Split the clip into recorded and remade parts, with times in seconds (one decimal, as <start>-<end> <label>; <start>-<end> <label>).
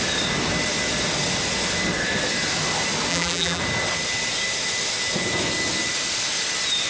0.0-3.1 recorded; 3.1-3.6 remade; 3.6-6.9 recorded